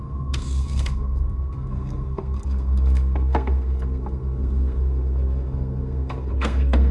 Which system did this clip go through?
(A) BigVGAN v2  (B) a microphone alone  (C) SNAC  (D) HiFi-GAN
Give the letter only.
C